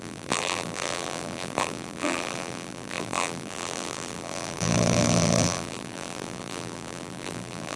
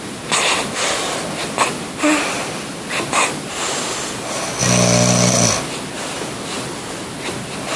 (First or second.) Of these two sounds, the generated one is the first